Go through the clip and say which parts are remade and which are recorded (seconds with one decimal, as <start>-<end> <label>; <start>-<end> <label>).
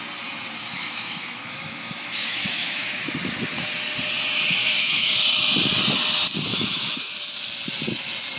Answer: 0.0-0.6 recorded; 0.6-3.1 remade; 3.1-4.6 recorded; 4.6-5.2 remade; 5.2-6.5 recorded; 6.5-7.1 remade; 7.1-8.4 recorded